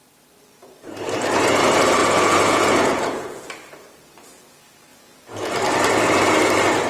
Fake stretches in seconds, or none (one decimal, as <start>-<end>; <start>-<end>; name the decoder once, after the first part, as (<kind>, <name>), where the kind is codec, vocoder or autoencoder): 2.0-3.5 (vocoder, Vocos); 4.9-5.5